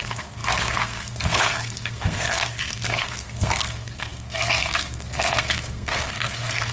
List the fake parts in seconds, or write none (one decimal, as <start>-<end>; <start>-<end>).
0.0-6.7